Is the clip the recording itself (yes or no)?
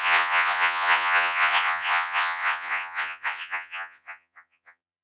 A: no